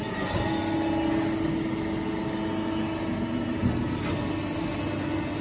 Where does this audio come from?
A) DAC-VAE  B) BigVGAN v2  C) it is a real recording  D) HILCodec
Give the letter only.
C